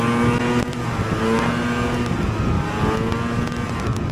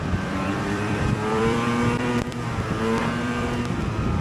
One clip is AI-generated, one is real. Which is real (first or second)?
first